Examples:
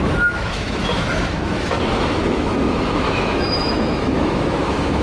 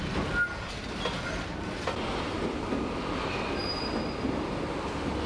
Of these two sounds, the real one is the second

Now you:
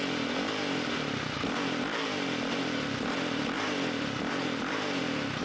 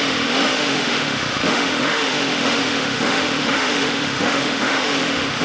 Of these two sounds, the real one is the first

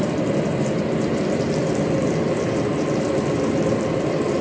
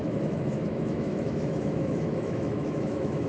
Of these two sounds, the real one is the first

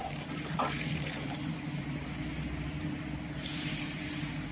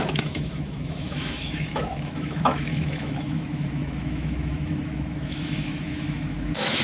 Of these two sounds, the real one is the first